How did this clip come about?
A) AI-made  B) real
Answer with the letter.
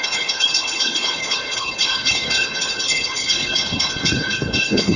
A